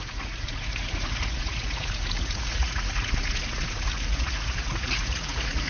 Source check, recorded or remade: remade